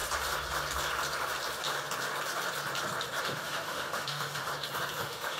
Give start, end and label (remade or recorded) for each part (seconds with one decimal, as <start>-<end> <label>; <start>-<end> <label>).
0.0-3.2 recorded; 3.2-4.5 remade; 4.5-5.0 recorded; 5.0-5.4 remade